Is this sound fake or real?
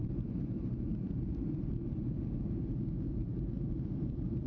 fake